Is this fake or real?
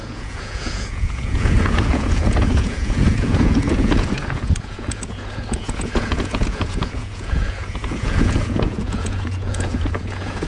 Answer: fake